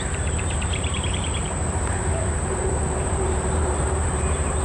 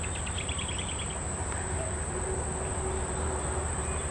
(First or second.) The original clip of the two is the second